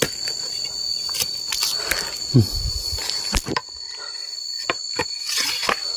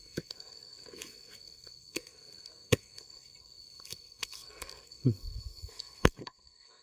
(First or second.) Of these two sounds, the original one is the first